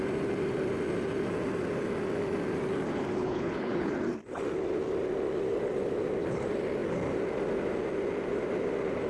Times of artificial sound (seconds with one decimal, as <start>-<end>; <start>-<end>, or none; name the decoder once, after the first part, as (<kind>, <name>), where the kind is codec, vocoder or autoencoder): 3.2-3.9 (codec, HILCodec)